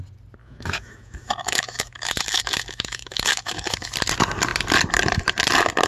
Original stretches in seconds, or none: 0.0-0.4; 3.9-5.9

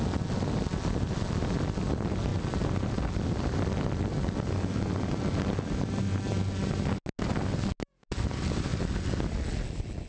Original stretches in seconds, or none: 0.0-10.1